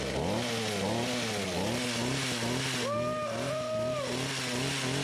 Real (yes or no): yes